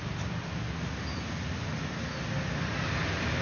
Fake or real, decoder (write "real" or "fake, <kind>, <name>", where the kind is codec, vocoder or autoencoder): real